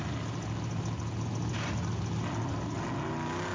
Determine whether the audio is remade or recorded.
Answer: recorded